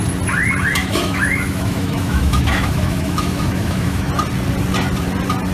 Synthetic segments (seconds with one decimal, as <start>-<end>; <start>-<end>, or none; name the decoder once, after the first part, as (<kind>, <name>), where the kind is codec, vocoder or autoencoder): 0.8-4.1 (autoencoder, DAC-VAE)